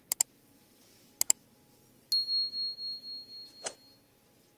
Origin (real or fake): real